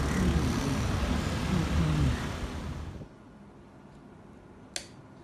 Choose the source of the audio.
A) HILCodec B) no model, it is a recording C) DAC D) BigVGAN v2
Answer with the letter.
B